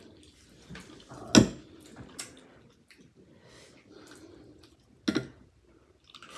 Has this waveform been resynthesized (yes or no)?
no